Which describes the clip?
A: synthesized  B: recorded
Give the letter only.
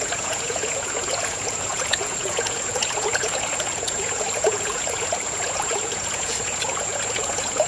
A